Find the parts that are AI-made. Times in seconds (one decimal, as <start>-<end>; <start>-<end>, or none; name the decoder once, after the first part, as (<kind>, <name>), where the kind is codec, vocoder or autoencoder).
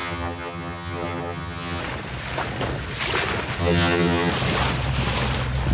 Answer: 0.0-1.8 (vocoder, HiFi-GAN); 3.6-4.3